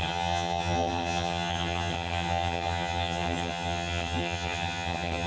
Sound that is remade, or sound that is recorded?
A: remade